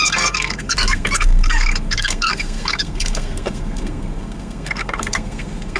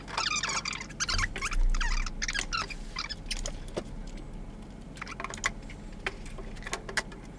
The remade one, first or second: first